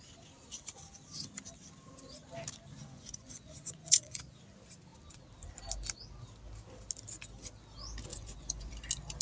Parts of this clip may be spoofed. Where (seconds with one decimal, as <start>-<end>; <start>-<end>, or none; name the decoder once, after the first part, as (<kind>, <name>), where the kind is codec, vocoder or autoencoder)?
2.8-4.2 (vocoder, Vocos); 8.1-8.7